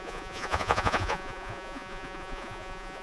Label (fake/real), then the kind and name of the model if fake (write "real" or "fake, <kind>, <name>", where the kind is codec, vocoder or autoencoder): fake, vocoder, Vocos